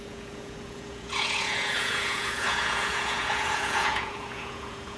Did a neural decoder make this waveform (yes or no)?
yes